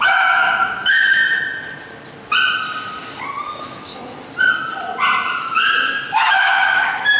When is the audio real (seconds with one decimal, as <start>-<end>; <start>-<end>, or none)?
1.2-3.5; 3.9-5.4